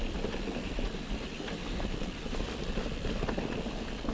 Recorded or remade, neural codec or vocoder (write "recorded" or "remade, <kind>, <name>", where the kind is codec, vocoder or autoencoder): remade, vocoder, BigVGAN v2